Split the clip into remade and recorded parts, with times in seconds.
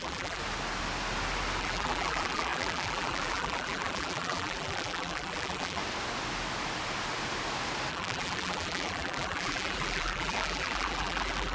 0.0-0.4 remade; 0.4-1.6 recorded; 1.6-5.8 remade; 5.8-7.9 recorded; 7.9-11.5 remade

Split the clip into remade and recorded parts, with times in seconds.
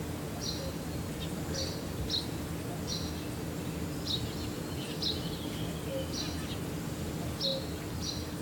0.0-8.4 recorded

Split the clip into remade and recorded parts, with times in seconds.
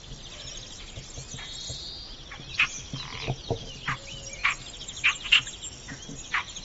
0.0-6.6 recorded